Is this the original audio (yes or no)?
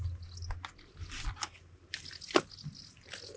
yes